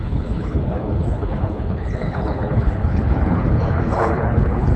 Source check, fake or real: fake